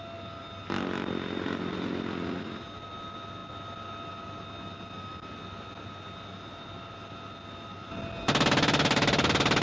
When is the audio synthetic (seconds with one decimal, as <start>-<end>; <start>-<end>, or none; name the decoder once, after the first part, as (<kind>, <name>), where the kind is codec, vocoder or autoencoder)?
none

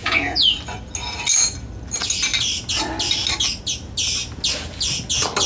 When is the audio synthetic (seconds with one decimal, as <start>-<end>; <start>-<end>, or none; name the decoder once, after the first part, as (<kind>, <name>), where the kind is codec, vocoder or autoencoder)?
0.0-0.6 (vocoder, Vocos)